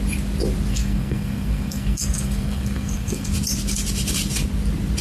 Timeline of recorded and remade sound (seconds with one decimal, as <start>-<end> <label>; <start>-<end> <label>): 0.0-0.7 recorded; 0.7-3.3 remade; 3.3-5.0 recorded